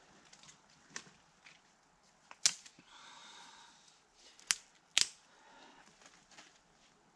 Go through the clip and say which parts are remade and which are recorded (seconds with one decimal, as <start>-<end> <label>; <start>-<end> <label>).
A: 0.0-7.2 recorded